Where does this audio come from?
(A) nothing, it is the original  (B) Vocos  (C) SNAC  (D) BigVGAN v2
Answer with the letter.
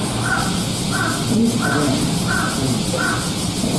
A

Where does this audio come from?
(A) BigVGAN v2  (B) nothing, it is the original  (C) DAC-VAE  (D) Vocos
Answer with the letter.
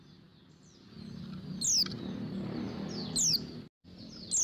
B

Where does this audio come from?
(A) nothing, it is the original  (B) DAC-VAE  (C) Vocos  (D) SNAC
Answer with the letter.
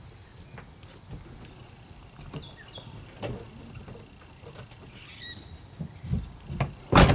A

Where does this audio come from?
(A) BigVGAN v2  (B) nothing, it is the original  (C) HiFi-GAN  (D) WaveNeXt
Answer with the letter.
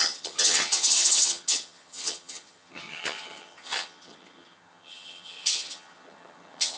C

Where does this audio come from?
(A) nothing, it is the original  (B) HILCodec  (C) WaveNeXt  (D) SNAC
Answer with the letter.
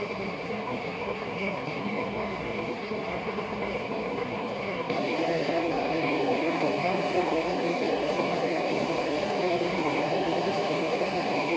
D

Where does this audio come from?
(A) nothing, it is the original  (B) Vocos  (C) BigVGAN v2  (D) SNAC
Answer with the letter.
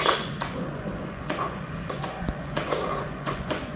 B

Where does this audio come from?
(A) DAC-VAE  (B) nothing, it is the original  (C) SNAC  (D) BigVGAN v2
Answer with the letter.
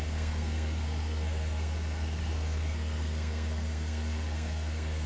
C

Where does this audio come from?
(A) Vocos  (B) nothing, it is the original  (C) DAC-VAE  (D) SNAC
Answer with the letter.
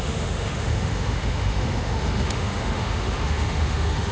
C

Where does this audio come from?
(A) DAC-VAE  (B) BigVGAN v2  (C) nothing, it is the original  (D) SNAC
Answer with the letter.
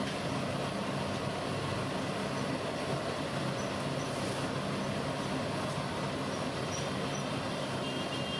C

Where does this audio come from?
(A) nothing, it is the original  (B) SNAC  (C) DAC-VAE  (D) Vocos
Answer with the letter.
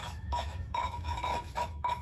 C